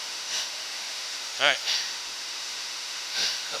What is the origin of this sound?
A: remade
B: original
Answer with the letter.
A